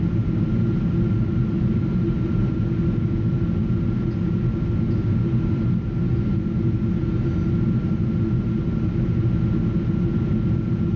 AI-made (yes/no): no